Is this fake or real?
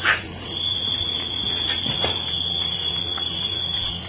fake